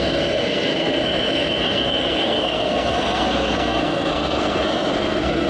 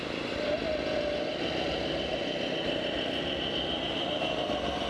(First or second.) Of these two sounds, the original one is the second